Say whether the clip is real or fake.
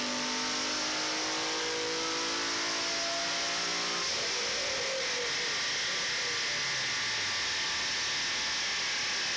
real